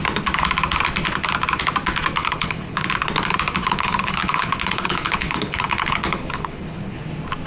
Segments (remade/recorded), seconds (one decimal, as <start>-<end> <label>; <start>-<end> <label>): 0.0-2.2 recorded; 2.2-3.1 remade; 3.1-3.6 recorded; 3.6-7.0 remade; 7.0-7.5 recorded